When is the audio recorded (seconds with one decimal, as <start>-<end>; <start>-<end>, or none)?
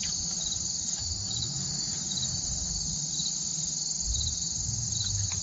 3.5-4.0